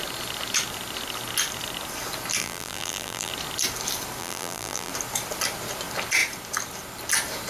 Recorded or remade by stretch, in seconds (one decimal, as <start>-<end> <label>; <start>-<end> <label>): 0.0-2.4 recorded; 2.4-3.3 remade; 3.3-4.2 recorded; 4.2-4.9 remade; 4.9-7.5 recorded